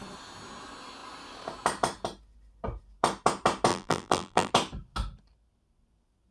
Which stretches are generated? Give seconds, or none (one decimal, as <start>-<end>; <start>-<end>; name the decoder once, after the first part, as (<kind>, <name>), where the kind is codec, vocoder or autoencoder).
3.7-4.5 (vocoder, BigVGAN v2)